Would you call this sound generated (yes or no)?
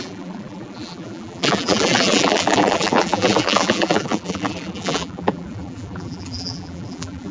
yes